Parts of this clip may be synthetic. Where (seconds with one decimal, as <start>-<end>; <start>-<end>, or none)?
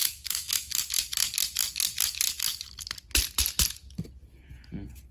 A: 0.0-0.8